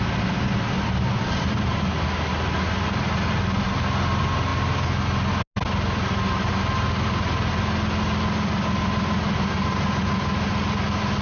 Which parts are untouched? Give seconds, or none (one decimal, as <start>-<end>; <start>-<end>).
0.0-11.2